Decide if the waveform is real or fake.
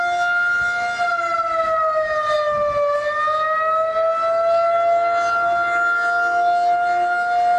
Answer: real